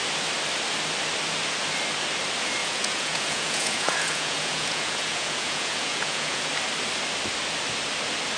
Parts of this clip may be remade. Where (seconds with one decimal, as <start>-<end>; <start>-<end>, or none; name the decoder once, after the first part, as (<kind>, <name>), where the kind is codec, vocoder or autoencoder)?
2.6-6.5 (vocoder, Vocos)